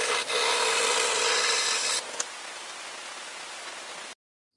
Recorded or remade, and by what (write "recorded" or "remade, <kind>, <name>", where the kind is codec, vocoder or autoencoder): recorded